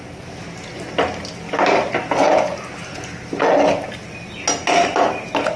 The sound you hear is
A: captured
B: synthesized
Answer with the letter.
A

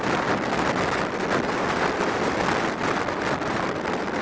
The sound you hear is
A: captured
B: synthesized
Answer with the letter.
A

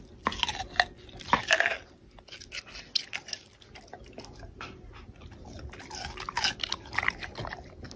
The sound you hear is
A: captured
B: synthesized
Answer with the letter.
A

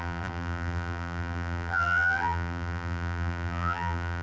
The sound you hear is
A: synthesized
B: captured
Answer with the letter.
A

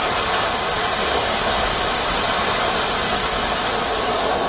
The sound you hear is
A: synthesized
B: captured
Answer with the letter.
A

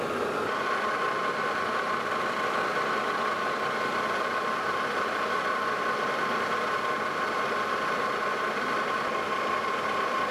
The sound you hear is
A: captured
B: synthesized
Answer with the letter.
A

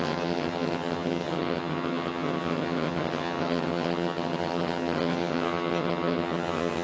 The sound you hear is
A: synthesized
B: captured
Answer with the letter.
A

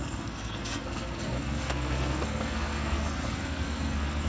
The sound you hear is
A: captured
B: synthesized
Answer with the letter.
B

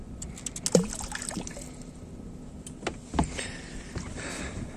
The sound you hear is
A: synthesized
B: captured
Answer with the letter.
B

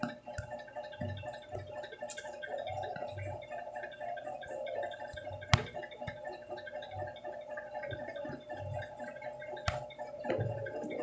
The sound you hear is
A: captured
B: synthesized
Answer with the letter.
A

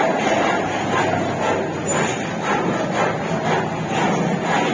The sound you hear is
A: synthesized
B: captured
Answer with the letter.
B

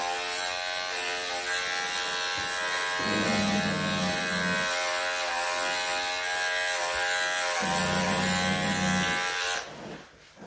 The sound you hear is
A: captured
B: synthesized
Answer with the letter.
A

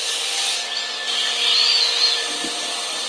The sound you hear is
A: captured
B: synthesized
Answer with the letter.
A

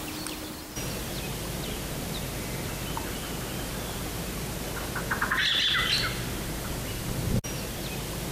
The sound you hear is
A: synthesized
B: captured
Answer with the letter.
B